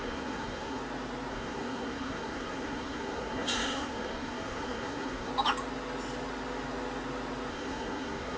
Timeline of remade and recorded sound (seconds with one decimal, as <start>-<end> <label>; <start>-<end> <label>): 0.0-0.8 remade; 0.8-1.3 recorded; 1.3-5.3 remade; 5.3-7.5 recorded; 7.5-8.4 remade